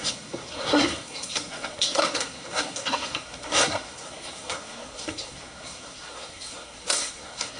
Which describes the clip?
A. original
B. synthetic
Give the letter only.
B